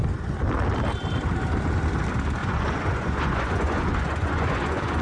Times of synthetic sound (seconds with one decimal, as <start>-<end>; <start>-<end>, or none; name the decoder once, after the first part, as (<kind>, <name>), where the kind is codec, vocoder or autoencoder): 2.4-5.0 (vocoder, Vocos)